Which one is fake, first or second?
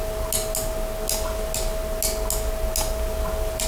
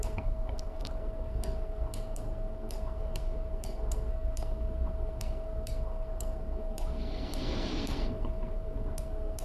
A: second